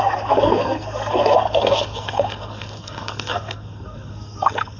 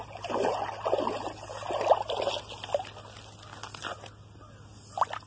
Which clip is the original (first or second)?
second